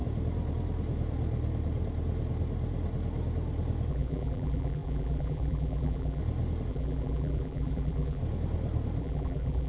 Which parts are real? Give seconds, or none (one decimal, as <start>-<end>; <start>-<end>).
0.0-3.9; 6.2-6.7; 8.2-9.0